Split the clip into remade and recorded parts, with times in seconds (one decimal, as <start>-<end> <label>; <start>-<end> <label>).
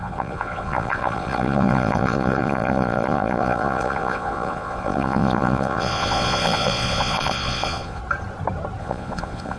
0.0-8.0 remade; 8.0-8.8 recorded; 8.8-9.6 remade